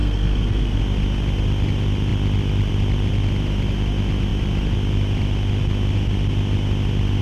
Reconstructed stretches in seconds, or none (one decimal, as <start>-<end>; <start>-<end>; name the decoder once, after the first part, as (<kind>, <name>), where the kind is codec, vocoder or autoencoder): 0.0-0.8 (codec, SNAC)